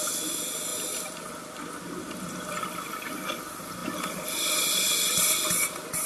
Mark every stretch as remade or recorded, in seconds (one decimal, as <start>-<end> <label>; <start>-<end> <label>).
0.0-6.1 recorded